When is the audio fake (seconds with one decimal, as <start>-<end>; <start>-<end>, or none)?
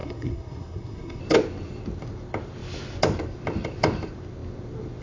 0.0-1.2